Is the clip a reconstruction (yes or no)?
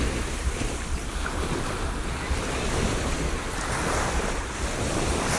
no